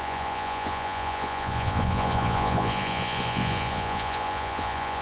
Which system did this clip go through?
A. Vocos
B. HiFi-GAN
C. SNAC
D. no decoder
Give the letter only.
A